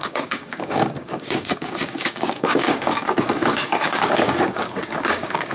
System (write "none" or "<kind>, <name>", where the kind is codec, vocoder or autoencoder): codec, DAC